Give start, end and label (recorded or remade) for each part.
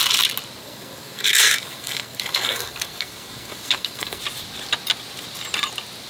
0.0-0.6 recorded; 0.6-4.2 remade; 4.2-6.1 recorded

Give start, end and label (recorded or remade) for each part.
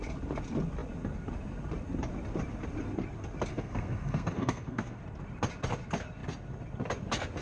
0.0-3.5 recorded; 3.5-5.0 remade; 5.0-7.4 recorded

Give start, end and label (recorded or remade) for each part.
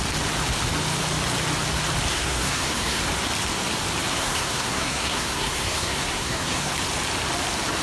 0.0-2.1 recorded; 2.1-3.0 remade; 3.0-4.1 recorded; 4.1-6.7 remade; 6.7-7.8 recorded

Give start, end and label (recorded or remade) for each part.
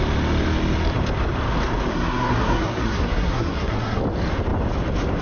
0.0-1.9 recorded; 1.9-4.0 remade; 4.0-5.2 recorded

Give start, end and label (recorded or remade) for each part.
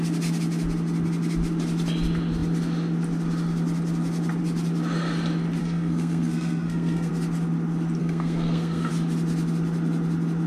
0.0-5.6 recorded; 5.6-7.1 remade; 7.1-8.0 recorded; 8.0-8.9 remade; 8.9-10.5 recorded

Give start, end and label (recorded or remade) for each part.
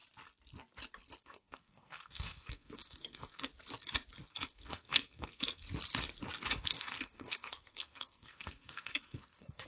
0.0-1.2 recorded; 1.2-3.5 remade; 3.5-4.3 recorded; 4.3-5.6 remade; 5.6-6.5 recorded; 6.5-9.7 remade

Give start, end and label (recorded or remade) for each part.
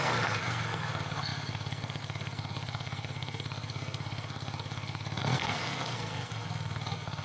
0.0-7.2 remade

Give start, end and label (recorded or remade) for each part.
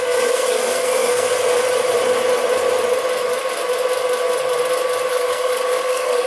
0.0-1.3 remade; 1.3-5.1 recorded; 5.1-6.3 remade